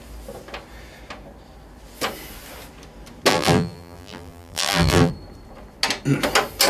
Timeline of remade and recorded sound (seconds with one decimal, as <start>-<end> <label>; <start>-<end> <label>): 0.0-3.3 recorded; 3.3-5.1 remade; 5.1-6.7 recorded